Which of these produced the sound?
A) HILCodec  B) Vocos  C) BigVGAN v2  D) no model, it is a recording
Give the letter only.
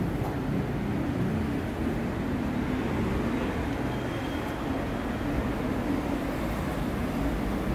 D